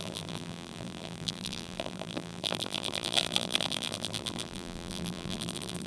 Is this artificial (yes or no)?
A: yes